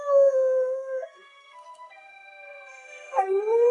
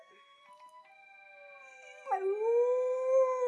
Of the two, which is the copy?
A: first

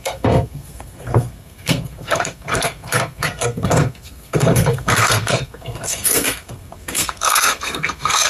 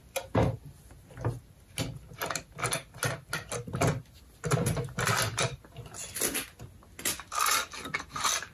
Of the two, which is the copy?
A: first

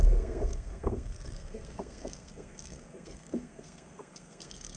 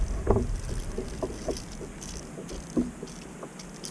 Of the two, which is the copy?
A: first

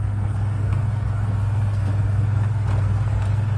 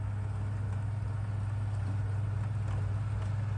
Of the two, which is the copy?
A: first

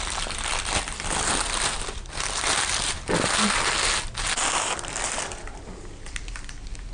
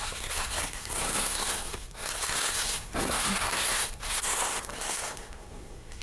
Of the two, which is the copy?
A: second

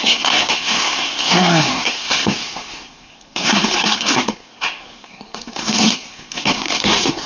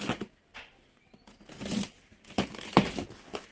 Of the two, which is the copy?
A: first